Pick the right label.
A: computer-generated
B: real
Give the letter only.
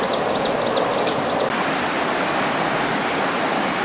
B